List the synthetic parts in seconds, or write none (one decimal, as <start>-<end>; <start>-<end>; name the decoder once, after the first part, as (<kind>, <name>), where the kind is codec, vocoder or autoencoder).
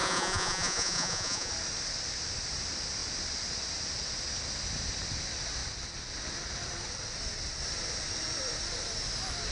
0.0-1.5 (vocoder, Vocos)